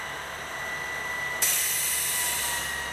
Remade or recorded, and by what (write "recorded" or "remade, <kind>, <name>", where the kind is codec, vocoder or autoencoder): recorded